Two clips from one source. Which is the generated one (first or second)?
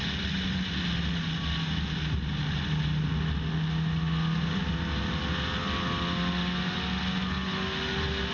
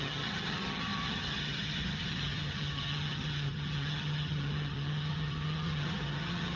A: second